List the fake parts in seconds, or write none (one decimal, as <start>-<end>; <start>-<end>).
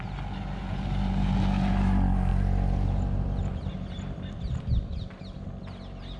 2.3-6.2